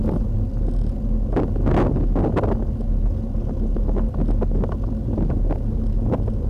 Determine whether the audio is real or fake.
real